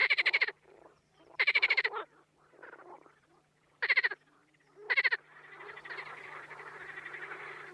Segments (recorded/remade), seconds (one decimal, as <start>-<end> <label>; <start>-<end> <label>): 0.0-4.4 remade; 4.4-6.2 recorded; 6.2-7.7 remade